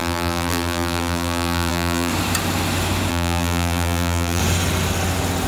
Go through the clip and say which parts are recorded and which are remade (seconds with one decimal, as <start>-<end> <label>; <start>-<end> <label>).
0.0-2.1 remade; 2.1-3.1 recorded; 3.1-4.4 remade; 4.4-5.5 recorded